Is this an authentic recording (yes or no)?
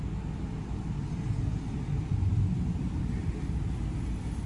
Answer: yes